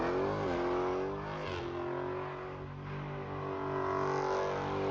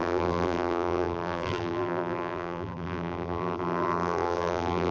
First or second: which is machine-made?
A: second